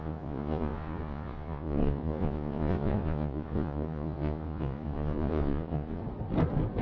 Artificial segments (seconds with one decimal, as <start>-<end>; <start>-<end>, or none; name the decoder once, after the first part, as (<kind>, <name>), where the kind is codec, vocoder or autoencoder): 0.0-6.0 (vocoder, Vocos)